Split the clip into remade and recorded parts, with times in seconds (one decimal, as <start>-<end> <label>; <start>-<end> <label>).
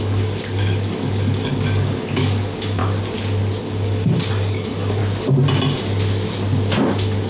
0.0-2.8 remade; 2.8-3.6 recorded; 3.6-5.0 remade; 5.0-6.8 recorded; 6.8-7.3 remade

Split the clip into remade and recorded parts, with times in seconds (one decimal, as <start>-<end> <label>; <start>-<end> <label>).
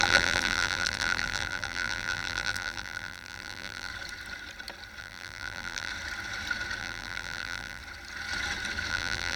0.0-3.9 remade; 3.9-5.0 recorded; 5.0-5.9 remade; 5.9-6.8 recorded; 6.8-7.8 remade; 7.8-8.9 recorded; 8.9-9.4 remade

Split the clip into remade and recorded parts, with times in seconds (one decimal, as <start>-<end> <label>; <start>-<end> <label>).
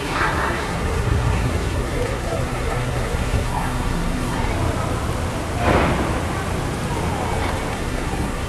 0.0-4.5 remade; 4.5-7.7 recorded; 7.7-8.5 remade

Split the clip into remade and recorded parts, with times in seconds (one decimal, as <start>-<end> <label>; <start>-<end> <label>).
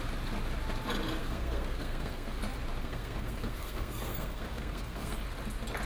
0.0-1.2 recorded; 1.2-2.4 remade; 2.4-2.8 recorded; 2.8-5.2 remade; 5.2-5.8 recorded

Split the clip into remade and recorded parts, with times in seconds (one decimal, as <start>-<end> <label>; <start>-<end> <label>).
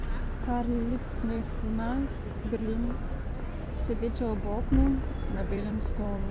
0.0-5.2 recorded; 5.2-6.3 remade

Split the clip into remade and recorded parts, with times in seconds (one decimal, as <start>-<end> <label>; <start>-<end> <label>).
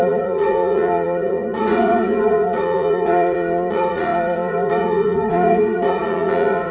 0.0-6.7 remade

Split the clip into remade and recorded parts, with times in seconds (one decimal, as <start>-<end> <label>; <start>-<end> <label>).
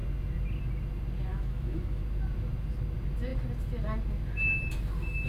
0.0-1.3 recorded; 1.3-2.0 remade; 2.0-5.3 recorded